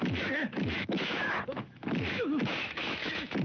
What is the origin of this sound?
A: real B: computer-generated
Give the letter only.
B